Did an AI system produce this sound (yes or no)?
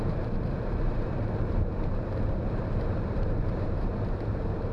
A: yes